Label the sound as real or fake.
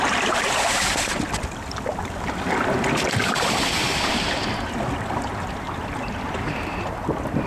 real